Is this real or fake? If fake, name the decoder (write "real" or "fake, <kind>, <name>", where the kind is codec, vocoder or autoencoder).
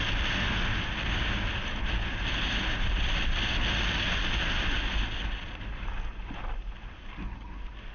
real